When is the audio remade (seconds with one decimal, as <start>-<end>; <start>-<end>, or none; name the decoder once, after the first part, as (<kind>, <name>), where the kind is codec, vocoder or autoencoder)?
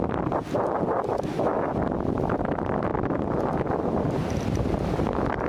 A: 1.1-1.7 (autoencoder, DAC-VAE)